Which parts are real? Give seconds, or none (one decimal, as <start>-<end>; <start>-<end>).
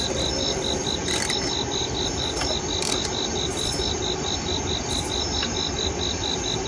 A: 1.8-2.9